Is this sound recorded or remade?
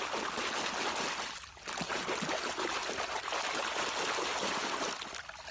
recorded